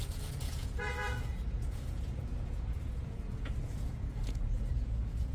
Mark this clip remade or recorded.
remade